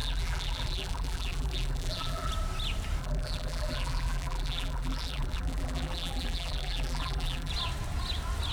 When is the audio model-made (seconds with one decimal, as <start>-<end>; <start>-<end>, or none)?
0.0-2.3; 3.0-7.5